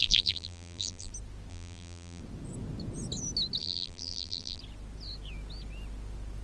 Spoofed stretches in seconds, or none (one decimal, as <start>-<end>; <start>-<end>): 0.0-1.1; 1.5-2.2; 3.6-4.6